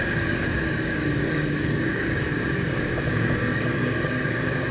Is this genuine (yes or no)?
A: no